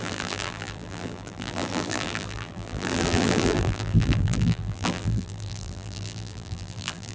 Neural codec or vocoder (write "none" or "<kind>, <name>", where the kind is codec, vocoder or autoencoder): vocoder, BigVGAN v2